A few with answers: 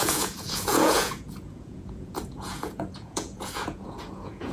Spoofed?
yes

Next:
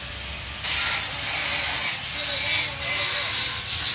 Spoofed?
no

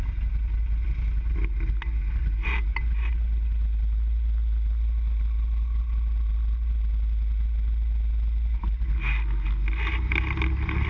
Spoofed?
no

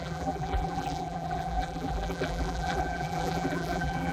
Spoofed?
yes